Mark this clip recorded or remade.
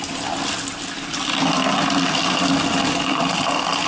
recorded